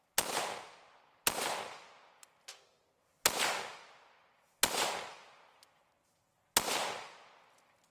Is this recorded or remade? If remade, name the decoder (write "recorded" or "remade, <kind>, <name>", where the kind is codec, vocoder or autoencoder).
recorded